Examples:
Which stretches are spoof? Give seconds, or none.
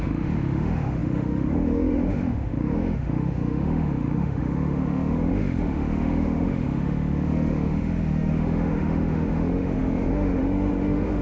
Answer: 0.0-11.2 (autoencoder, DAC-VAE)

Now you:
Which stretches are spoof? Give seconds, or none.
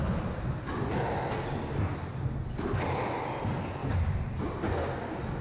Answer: 3.8-4.4 (vocoder, BigVGAN v2)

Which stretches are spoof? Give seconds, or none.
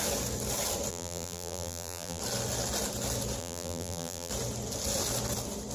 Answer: 0.9-2.2 (vocoder, BigVGAN v2); 3.4-4.3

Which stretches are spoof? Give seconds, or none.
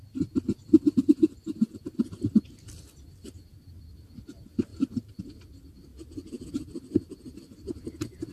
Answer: 4.7-5.2 (vocoder, BigVGAN v2)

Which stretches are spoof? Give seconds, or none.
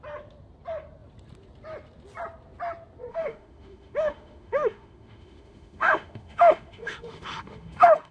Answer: 3.1-8.1 (autoencoder, DAC-VAE)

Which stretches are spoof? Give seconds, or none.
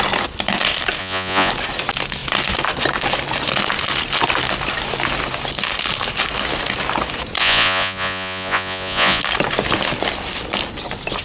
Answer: 1.0-1.5 (vocoder, Vocos); 7.4-9.2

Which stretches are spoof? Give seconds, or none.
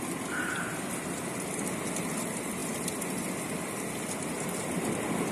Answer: none